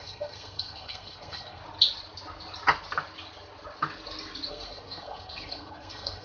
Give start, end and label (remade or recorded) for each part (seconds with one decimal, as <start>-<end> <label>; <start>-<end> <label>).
0.0-1.6 remade; 1.6-4.5 recorded; 4.5-6.2 remade